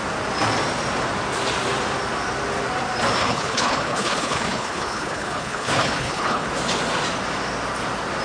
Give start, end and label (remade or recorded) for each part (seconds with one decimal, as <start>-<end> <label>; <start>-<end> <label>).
0.0-3.2 recorded; 3.2-6.5 remade; 6.5-8.2 recorded